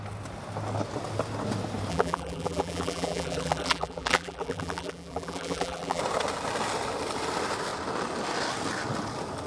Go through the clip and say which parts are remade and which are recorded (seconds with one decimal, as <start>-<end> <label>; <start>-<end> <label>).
0.0-1.9 recorded; 1.9-6.0 remade; 6.0-9.5 recorded